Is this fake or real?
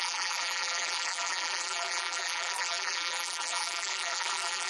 fake